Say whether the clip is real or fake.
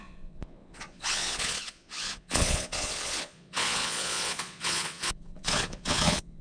fake